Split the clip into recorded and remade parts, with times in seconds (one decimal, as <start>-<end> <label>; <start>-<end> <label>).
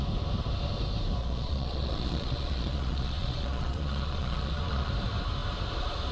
0.0-1.2 recorded; 1.2-4.9 remade; 4.9-6.1 recorded